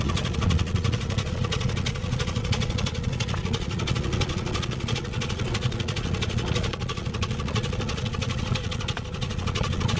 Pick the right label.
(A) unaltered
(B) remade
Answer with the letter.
B